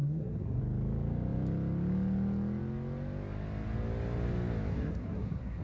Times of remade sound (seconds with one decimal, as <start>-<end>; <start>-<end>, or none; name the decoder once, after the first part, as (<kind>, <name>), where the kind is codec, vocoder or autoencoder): 0.0-0.6 (codec, SNAC); 4.7-5.6